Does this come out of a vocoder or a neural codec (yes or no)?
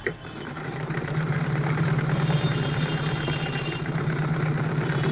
yes